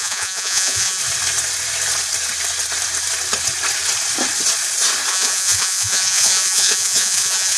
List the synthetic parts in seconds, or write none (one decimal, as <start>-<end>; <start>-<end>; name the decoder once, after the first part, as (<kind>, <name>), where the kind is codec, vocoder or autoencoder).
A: 0.0-1.0 (vocoder, Vocos); 5.1-7.6